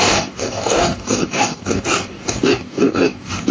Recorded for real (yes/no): no